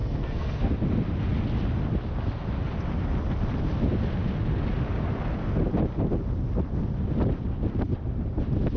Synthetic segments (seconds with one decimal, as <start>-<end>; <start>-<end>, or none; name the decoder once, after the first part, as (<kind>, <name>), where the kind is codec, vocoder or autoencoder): 0.0-0.7 (codec, SNAC)